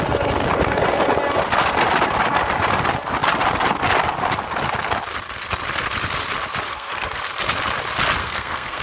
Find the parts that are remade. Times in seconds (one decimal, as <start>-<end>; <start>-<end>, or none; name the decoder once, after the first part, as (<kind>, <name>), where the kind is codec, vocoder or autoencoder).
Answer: 6.7-7.2 (codec, SNAC); 8.2-8.8